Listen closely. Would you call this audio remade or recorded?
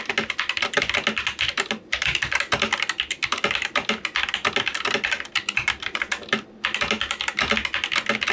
recorded